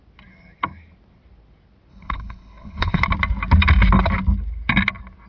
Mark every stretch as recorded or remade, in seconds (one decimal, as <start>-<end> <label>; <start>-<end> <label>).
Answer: 0.0-1.9 recorded; 1.9-3.0 remade; 3.0-5.3 recorded